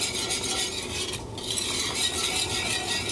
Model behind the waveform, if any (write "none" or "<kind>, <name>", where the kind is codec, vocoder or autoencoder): none